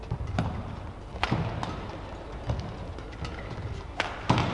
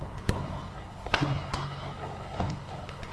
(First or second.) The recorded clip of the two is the first